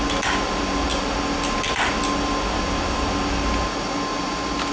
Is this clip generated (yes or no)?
no